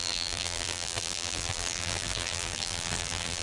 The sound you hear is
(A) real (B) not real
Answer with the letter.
B